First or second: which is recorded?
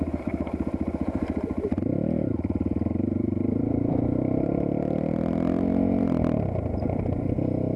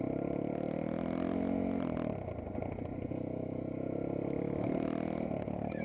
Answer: second